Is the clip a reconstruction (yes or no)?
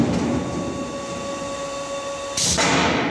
no